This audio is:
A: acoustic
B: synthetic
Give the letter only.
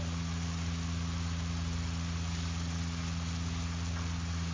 A